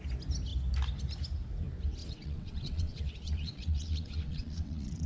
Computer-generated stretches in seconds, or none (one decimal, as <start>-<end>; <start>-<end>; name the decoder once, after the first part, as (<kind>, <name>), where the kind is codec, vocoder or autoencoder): 2.0-5.1 (vocoder, WaveNeXt)